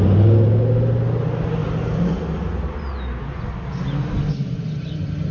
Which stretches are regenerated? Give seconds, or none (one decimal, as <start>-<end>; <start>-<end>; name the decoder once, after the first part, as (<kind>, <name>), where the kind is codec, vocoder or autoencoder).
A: none